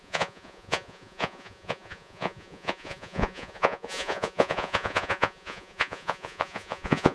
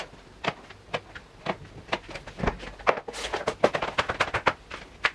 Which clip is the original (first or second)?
second